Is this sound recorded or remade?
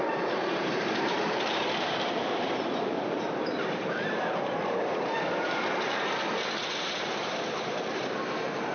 remade